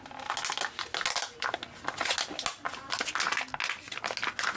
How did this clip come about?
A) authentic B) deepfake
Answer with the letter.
A